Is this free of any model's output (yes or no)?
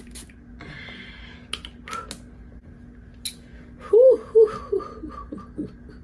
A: yes